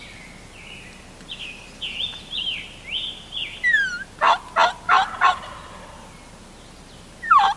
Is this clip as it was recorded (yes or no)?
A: yes